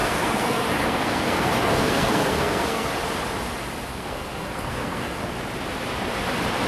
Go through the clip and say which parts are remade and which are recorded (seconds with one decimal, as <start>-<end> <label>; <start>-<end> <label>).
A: 0.0-2.9 remade; 2.9-3.9 recorded; 3.9-5.3 remade; 5.3-6.7 recorded